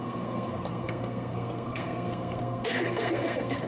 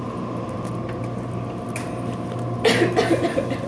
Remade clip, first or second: first